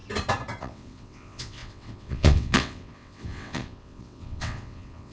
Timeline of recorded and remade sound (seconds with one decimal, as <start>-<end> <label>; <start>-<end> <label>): 0.0-0.6 recorded; 0.6-5.1 remade